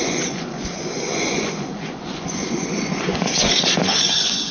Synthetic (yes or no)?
yes